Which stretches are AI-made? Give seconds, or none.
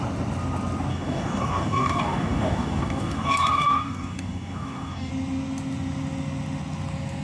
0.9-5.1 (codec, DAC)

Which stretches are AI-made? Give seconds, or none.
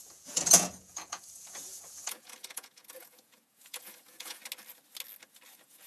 0.0-4.4 (vocoder, Vocos); 5.5-5.9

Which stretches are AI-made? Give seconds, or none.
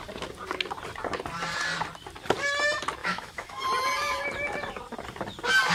3.0-3.6 (autoencoder, DAC-VAE)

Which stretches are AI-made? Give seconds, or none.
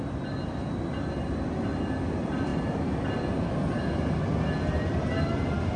none